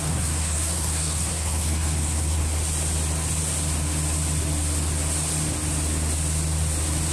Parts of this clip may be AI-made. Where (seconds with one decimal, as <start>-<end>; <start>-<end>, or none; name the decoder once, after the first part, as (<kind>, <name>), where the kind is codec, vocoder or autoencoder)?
0.0-2.4 (codec, SNAC)